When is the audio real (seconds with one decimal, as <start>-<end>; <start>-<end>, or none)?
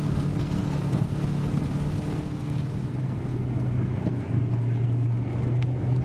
none